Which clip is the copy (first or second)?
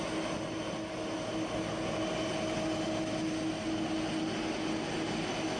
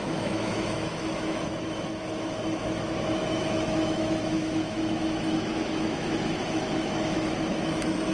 second